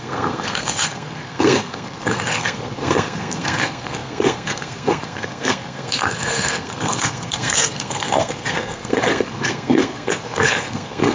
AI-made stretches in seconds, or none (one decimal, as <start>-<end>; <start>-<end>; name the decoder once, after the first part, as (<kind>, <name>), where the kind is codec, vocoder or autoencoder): 0.0-11.1 (codec, SNAC)